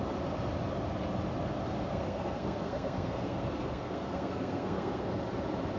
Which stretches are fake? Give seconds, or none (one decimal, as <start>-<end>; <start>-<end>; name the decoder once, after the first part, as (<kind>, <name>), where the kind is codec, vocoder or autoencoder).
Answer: 1.9-5.2 (codec, SNAC)